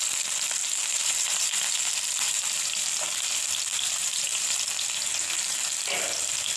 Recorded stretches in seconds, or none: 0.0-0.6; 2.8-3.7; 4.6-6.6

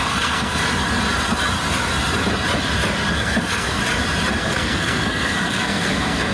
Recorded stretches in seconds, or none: 0.6-3.1; 3.8-4.3

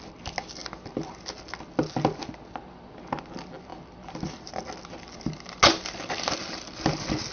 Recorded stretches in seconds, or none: 0.0-3.7; 4.8-7.3

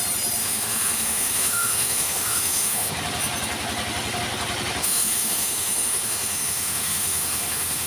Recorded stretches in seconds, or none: 0.0-0.4; 2.9-4.8